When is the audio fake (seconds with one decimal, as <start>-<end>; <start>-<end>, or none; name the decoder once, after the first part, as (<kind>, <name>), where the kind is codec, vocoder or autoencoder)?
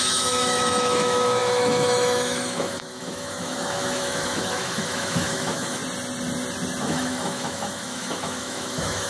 0.0-5.8 (autoencoder, DAC-VAE); 6.8-9.1